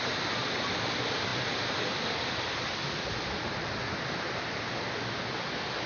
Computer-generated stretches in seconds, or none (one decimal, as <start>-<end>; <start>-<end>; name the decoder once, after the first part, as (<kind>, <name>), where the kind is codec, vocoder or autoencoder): none